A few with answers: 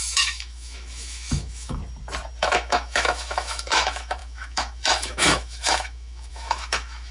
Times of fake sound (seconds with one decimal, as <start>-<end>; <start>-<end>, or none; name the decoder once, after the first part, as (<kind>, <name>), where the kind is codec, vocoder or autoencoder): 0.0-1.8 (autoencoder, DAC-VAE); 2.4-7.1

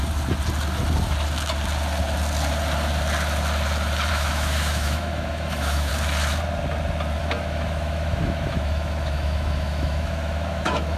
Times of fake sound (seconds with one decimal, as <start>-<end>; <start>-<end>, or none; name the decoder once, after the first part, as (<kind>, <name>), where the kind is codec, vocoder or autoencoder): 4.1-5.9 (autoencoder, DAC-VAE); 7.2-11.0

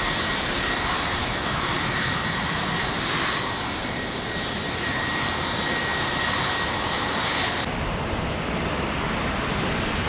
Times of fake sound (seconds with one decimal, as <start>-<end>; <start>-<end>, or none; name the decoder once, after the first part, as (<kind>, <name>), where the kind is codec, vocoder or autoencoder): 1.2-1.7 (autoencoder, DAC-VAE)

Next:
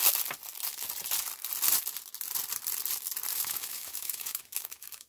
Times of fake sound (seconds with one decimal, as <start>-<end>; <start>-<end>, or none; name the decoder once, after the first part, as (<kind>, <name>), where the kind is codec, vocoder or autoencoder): 3.3-5.1 (autoencoder, DAC-VAE)